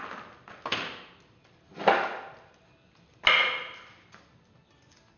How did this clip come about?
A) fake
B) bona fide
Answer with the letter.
B